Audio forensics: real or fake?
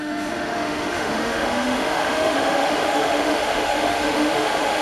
fake